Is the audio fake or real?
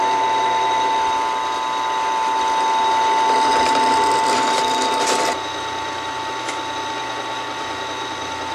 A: real